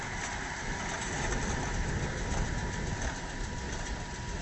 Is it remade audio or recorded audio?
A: recorded